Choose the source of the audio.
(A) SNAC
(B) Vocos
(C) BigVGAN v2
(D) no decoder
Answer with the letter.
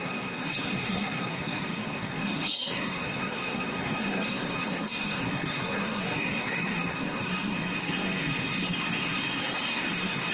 A